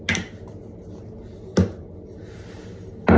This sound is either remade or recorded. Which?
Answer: recorded